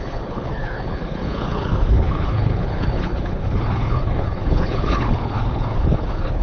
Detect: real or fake fake